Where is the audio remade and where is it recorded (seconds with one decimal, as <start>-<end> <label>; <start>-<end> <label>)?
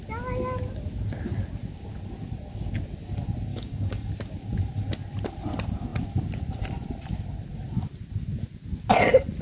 0.0-3.5 recorded; 3.5-4.1 remade; 4.1-9.4 recorded